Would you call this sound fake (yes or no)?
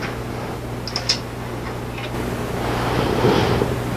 no